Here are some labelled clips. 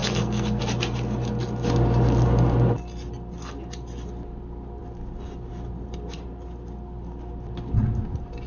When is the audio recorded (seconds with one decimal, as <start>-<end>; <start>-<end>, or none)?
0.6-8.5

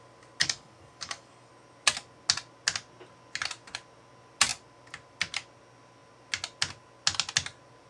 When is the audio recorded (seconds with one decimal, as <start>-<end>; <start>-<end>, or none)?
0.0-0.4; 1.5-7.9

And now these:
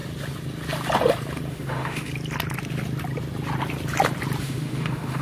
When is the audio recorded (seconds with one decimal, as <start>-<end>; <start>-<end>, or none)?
0.0-1.5; 2.1-4.4

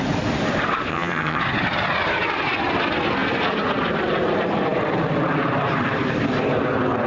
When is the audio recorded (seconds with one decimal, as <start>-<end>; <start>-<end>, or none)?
0.0-0.9; 1.4-7.1